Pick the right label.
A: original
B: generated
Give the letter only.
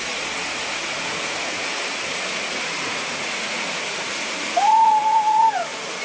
B